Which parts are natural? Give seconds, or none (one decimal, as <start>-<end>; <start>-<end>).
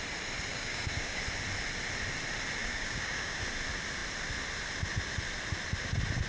0.0-0.5; 1.2-2.6; 3.5-6.3